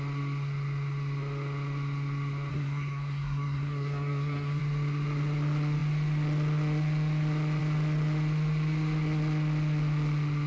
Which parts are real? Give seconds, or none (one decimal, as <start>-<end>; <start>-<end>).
0.0-2.5; 4.6-10.5